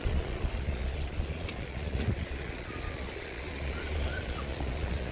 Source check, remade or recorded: remade